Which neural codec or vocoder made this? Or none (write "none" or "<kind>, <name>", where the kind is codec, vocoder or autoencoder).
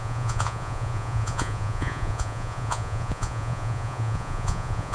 vocoder, Vocos